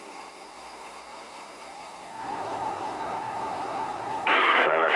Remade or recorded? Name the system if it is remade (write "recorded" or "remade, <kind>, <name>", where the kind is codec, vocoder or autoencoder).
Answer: remade, codec, SNAC